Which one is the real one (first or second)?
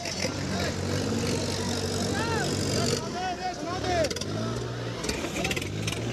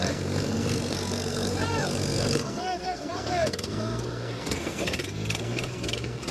first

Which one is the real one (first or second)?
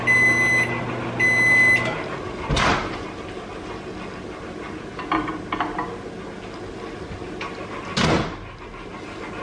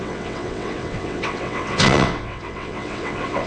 first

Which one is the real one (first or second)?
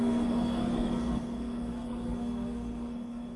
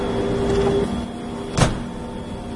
second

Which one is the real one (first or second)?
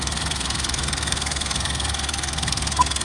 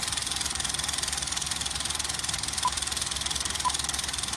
second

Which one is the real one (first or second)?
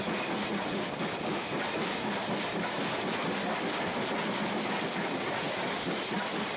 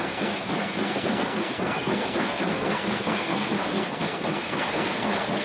first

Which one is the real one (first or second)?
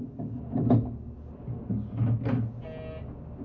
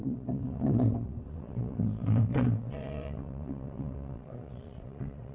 first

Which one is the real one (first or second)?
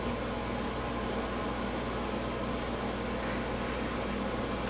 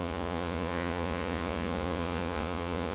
first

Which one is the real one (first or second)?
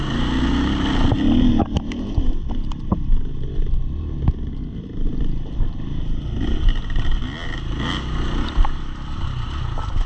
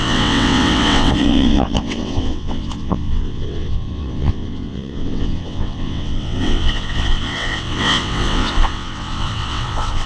first